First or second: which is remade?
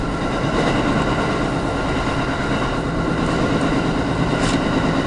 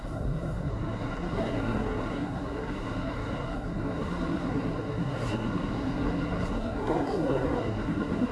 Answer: second